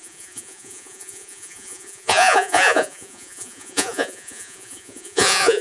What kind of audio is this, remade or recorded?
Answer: remade